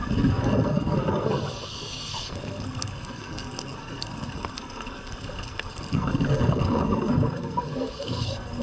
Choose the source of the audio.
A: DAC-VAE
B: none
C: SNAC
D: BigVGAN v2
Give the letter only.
C